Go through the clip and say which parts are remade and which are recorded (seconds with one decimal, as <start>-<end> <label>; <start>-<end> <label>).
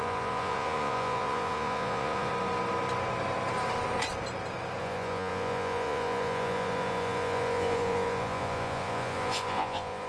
0.0-2.3 remade; 2.3-4.8 recorded; 4.8-10.1 remade